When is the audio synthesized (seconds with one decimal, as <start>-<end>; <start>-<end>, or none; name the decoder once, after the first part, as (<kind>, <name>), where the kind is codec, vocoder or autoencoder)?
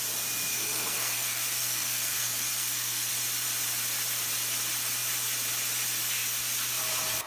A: 0.5-3.1 (codec, SNAC)